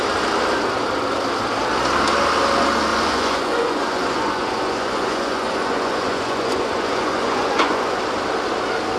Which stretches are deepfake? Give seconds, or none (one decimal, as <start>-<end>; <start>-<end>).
2.9-8.0